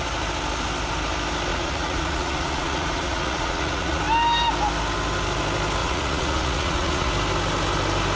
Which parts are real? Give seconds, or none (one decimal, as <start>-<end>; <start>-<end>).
0.0-1.5; 4.0-5.8; 7.1-8.2